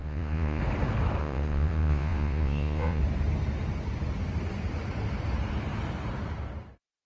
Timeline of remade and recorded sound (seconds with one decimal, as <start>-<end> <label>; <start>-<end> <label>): 0.0-0.6 remade; 0.6-1.2 recorded; 1.2-3.0 remade; 3.0-7.1 recorded